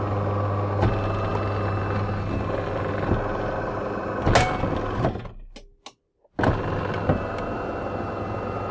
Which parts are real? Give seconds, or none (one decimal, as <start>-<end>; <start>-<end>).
0.0-8.7